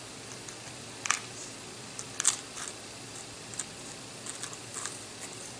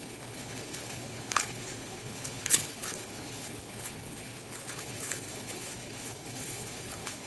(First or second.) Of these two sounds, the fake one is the second